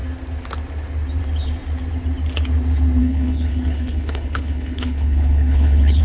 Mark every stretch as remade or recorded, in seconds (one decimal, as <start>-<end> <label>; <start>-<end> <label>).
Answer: 0.0-3.0 recorded; 3.0-6.0 remade